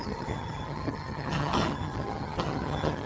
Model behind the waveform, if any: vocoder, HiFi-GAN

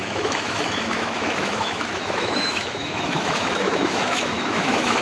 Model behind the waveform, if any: autoencoder, DAC-VAE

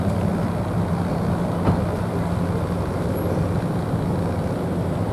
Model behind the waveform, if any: none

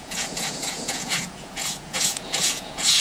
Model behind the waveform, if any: vocoder, Vocos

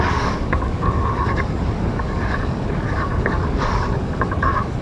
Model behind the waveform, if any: codec, DAC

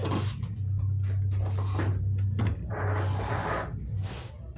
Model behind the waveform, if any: none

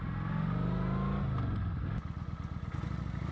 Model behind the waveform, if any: none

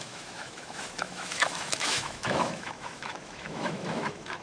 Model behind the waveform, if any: autoencoder, DAC-VAE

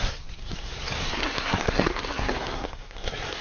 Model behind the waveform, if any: codec, SNAC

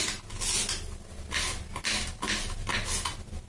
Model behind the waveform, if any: none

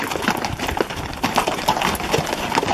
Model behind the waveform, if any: none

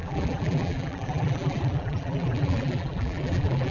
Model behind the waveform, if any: vocoder, BigVGAN v2